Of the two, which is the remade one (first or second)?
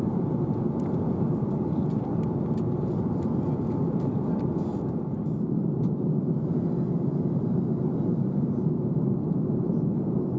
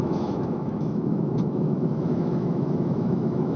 second